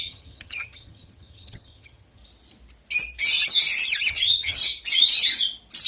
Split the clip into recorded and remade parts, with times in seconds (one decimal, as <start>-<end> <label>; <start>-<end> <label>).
0.0-2.2 remade; 2.2-4.1 recorded; 4.1-4.6 remade; 4.6-5.9 recorded